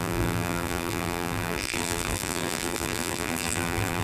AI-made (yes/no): yes